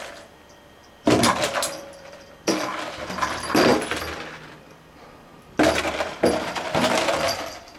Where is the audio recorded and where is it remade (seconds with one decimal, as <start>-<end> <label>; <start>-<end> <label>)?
0.0-7.8 remade